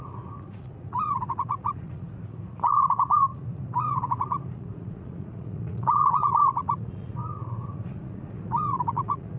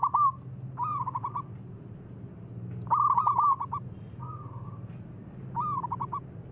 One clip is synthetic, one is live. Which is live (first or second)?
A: second